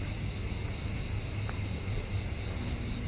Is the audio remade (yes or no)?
no